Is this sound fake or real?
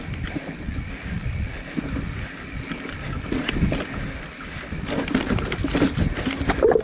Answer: real